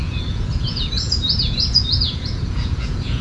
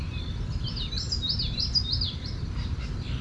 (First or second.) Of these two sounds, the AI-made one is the first